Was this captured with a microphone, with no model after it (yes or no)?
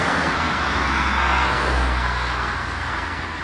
no